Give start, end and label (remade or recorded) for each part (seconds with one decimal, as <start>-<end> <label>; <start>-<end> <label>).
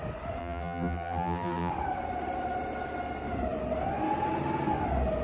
0.0-0.4 recorded; 0.4-1.7 remade; 1.7-5.2 recorded